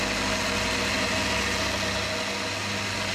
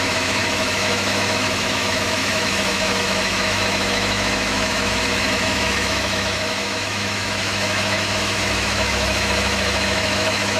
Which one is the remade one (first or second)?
second